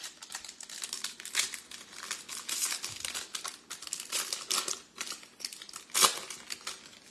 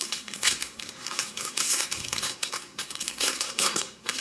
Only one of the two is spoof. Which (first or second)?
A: second